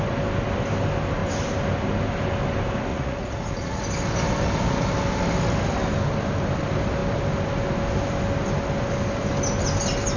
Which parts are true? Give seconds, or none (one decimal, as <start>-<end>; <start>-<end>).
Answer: 0.0-2.9; 3.8-10.2